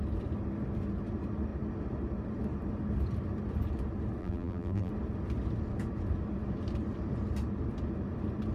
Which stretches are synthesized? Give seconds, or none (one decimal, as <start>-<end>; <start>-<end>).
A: 4.2-4.9